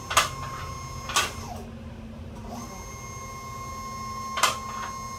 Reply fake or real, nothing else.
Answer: real